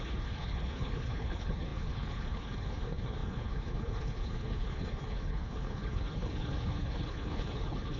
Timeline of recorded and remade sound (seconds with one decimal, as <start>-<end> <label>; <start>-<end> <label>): 0.0-8.0 remade